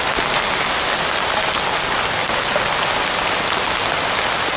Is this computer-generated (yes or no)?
no